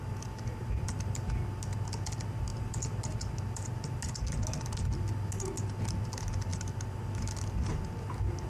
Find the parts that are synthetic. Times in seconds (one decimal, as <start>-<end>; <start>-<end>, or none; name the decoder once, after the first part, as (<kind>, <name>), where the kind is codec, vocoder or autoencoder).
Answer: none